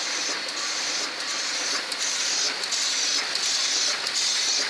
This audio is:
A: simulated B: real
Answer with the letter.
B